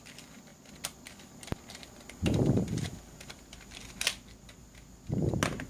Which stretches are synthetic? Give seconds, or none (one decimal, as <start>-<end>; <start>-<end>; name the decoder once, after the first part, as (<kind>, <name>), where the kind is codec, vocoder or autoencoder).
none